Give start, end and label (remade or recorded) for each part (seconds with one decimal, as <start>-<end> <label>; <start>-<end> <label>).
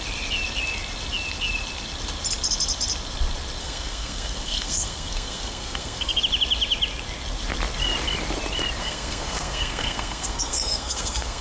0.0-3.6 recorded; 3.6-6.2 remade; 6.2-8.8 recorded; 8.8-11.4 remade